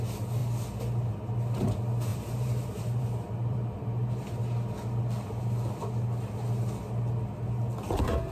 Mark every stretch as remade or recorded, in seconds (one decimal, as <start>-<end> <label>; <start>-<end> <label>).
0.0-2.1 recorded; 2.1-4.2 remade; 4.2-8.3 recorded